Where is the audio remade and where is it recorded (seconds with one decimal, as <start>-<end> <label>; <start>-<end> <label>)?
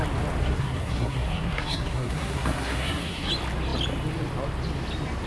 0.0-0.4 recorded; 0.4-3.3 remade; 3.3-5.3 recorded